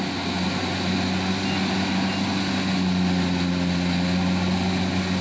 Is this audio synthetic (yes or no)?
no